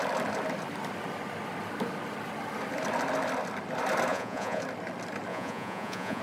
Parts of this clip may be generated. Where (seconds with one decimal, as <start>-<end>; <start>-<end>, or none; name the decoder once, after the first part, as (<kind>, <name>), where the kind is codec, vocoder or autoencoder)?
4.1-4.6 (vocoder, Vocos); 5.3-6.2